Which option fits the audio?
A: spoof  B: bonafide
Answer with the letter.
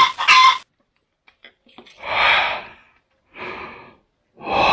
B